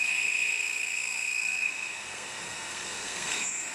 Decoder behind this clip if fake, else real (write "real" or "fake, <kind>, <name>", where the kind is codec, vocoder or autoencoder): fake, codec, SNAC